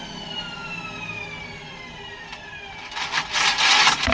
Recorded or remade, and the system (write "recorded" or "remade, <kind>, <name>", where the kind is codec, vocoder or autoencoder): recorded